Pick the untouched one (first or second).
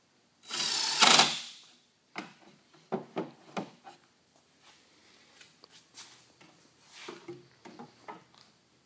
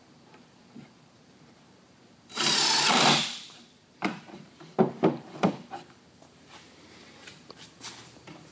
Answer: first